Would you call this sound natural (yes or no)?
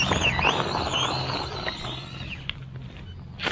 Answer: yes